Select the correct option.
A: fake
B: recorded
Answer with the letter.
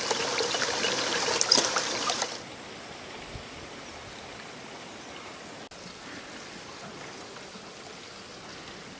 B